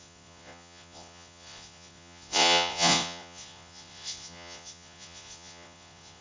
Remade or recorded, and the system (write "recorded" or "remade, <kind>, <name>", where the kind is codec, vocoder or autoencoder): remade, vocoder, Vocos